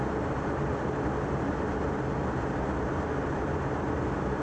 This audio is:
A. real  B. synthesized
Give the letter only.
A